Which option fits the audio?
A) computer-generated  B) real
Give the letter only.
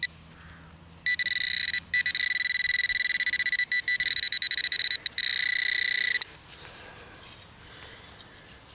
B